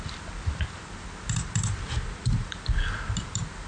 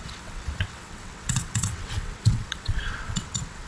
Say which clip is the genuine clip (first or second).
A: first